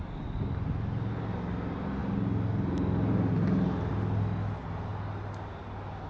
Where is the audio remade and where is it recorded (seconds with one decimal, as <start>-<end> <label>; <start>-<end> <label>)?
0.0-6.1 recorded